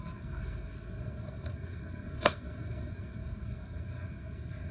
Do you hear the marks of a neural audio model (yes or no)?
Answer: yes